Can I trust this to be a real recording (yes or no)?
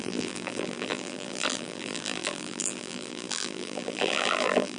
no